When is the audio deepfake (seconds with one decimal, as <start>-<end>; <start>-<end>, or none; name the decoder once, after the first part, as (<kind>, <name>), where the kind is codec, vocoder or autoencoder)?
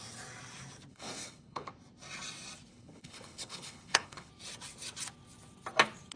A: 0.9-1.7 (codec, HILCodec); 2.7-4.3